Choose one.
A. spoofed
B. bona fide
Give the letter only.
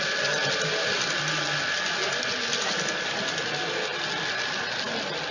B